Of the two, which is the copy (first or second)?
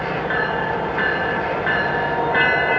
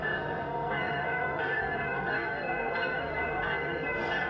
second